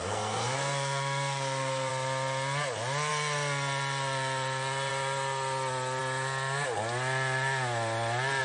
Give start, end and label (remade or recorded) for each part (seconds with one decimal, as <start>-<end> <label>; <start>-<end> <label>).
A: 0.0-1.9 remade; 1.9-8.4 recorded